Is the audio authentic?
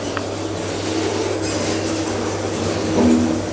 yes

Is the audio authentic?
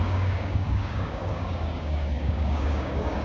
no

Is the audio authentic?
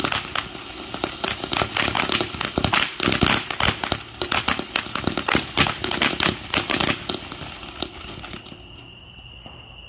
yes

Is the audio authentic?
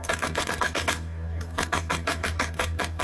no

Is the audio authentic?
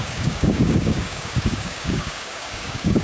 no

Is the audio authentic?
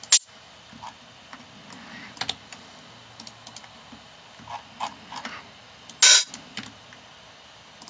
yes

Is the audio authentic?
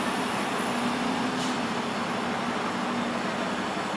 yes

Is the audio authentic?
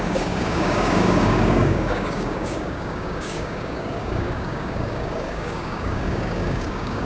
no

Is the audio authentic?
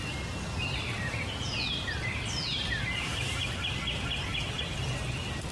yes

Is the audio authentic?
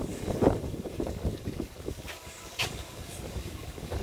no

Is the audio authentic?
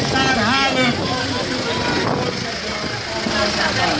yes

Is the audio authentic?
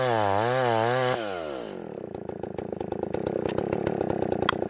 yes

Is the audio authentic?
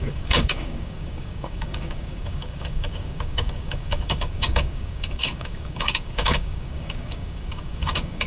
no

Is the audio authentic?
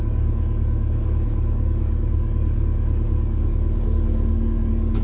no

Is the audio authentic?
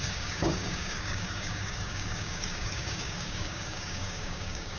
no